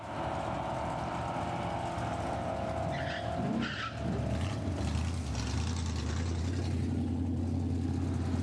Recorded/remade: recorded